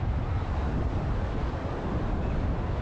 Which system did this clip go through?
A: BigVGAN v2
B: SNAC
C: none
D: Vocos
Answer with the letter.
A